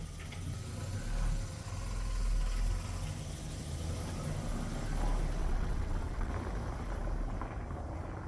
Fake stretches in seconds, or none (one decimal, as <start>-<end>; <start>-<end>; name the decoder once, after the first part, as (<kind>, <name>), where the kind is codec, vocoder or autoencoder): 5.4-6.3 (vocoder, WaveNeXt)